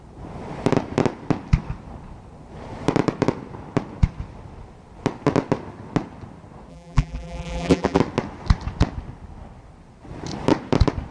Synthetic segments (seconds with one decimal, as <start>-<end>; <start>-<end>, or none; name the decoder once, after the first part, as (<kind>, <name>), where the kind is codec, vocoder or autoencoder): 6.7-8.0 (vocoder, BigVGAN v2)